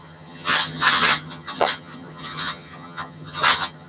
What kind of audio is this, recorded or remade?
remade